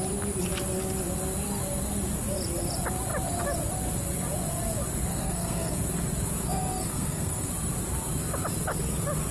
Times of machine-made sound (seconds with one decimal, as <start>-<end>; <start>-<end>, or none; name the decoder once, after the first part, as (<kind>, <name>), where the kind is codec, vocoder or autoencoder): 5.1-5.8 (codec, SNAC); 6.4-7.5